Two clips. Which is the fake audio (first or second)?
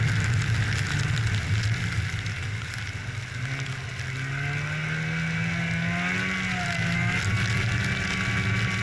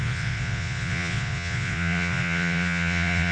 second